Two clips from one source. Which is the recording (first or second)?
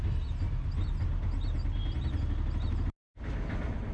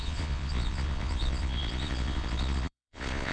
first